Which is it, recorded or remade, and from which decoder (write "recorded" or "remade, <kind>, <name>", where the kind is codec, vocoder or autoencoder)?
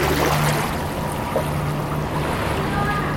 recorded